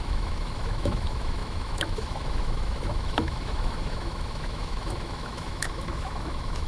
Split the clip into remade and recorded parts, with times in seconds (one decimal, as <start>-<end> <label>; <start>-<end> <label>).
0.0-6.7 remade